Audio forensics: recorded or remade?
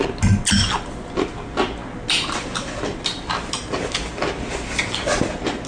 recorded